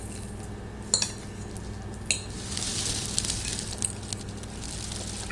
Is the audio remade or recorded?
recorded